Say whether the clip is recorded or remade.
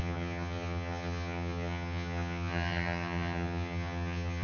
remade